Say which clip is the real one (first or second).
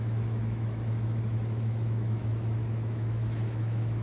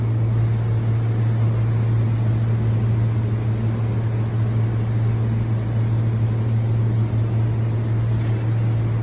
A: second